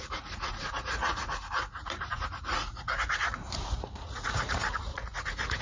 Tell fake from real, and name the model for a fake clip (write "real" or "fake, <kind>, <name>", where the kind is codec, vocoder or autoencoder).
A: fake, vocoder, Vocos